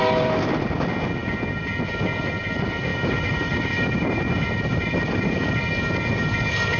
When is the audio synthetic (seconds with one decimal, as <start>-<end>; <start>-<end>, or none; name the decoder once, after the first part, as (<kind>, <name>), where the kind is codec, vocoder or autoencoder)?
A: 2.9-5.5 (vocoder, BigVGAN v2)